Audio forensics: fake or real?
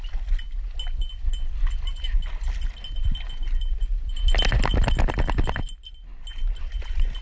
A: real